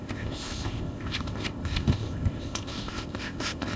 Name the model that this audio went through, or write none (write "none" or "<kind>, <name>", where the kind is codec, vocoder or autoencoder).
codec, ZipCodec